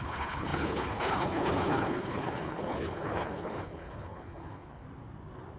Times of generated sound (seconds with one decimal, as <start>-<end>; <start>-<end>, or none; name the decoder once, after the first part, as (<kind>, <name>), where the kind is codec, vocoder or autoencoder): 0.0-4.8 (codec, HILCodec)